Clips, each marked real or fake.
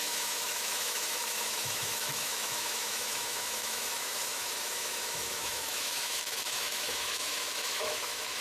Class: fake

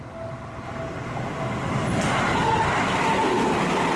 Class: real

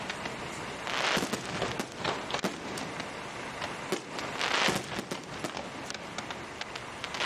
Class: real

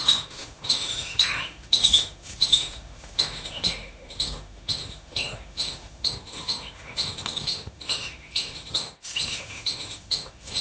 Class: fake